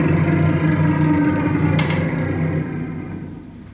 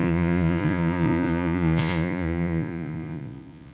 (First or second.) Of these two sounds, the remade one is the second